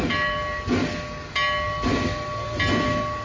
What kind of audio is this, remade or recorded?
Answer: recorded